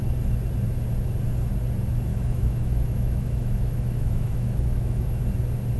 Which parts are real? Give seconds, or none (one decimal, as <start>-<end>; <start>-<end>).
0.0-2.1; 5.2-5.8